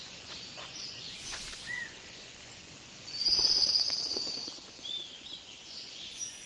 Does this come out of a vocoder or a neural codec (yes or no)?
yes